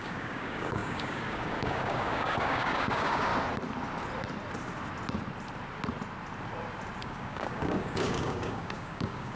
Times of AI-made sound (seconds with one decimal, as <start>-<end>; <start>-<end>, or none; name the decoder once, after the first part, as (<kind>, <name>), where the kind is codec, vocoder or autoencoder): 0.0-3.3 (codec, DAC); 7.0-9.4